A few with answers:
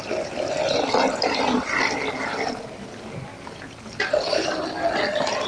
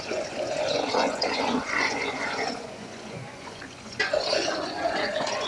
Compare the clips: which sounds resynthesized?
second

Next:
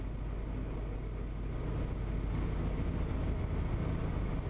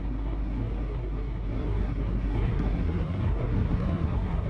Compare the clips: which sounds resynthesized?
second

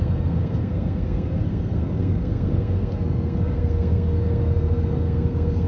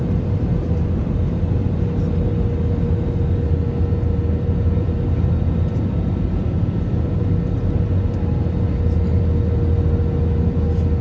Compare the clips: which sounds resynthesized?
first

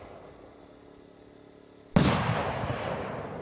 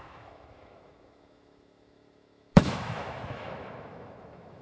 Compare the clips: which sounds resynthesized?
second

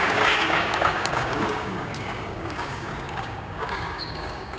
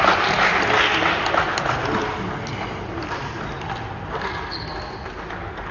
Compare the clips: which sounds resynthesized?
first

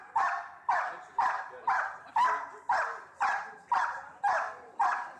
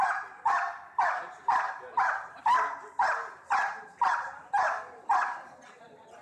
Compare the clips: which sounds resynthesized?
second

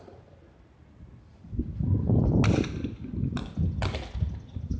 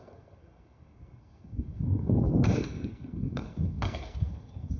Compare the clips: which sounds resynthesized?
second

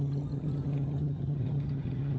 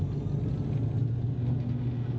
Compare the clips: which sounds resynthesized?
first